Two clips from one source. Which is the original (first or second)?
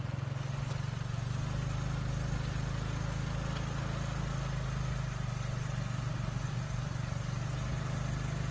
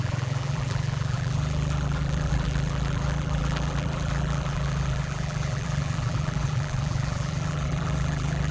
first